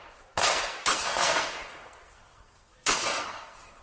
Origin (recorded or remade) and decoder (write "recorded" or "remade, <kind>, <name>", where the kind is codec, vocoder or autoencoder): remade, codec, SNAC